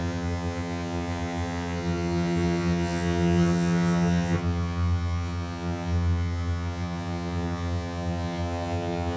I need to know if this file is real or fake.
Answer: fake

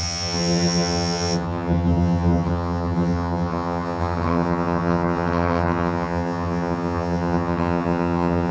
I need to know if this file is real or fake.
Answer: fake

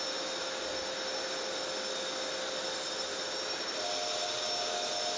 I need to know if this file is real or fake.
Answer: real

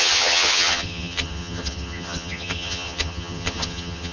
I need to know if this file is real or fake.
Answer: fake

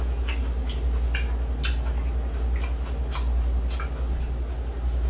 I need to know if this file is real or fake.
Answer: real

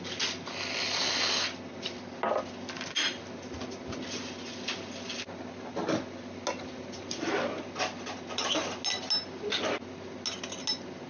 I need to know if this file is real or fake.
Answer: real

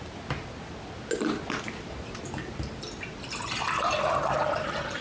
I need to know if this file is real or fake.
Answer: real